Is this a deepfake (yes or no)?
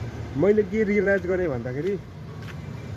yes